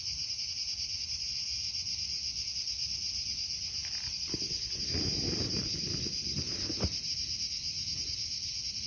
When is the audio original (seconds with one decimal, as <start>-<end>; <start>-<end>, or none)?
0.0-8.9